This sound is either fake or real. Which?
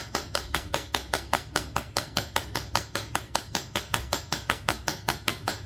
fake